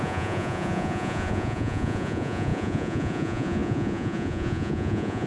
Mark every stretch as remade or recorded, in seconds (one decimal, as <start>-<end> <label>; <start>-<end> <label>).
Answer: 0.0-5.3 remade